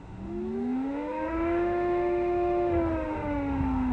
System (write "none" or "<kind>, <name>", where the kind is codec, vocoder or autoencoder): autoencoder, DAC-VAE